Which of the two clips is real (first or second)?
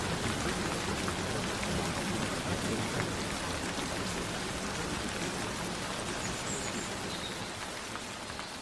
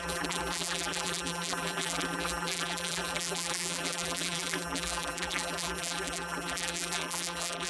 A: first